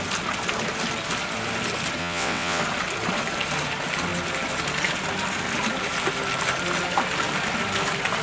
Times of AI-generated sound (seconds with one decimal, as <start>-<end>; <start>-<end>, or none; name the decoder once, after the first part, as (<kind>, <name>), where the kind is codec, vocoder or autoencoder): 2.0-2.6 (vocoder, WaveNeXt)